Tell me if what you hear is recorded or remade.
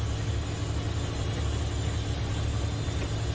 recorded